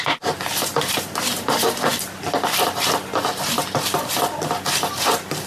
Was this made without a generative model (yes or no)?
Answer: no